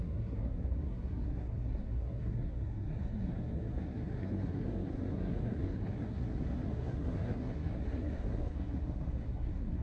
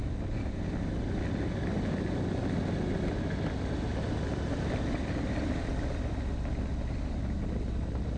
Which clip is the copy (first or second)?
first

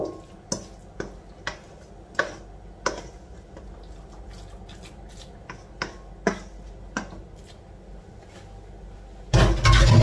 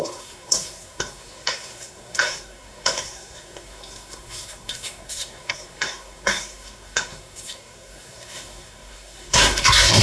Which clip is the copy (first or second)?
second